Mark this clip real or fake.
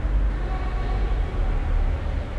real